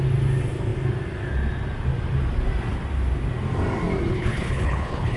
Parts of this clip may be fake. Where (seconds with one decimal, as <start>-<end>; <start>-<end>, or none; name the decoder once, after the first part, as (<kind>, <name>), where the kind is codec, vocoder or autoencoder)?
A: 4.1-5.2 (codec, HILCodec)